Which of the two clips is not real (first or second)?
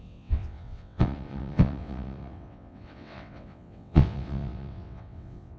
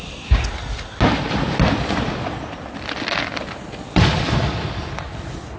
first